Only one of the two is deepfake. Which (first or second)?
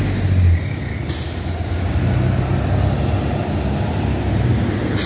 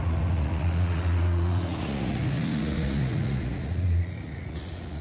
second